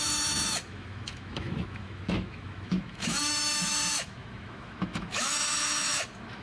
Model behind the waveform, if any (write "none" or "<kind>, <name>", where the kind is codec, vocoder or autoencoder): autoencoder, DAC-VAE